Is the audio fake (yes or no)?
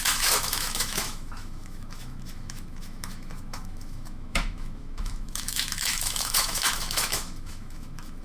yes